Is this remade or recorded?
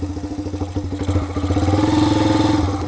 recorded